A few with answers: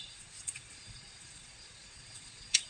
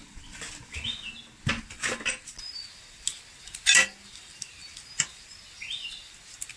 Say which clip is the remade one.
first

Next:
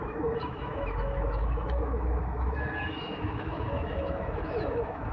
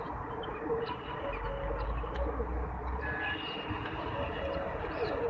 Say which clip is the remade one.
first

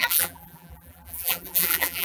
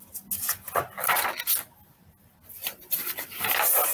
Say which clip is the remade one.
first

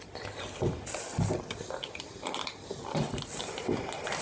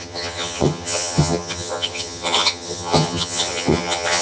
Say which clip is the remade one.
second